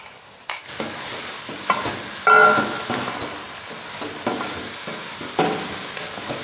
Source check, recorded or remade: recorded